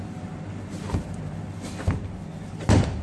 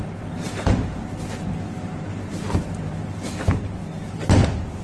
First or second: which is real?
second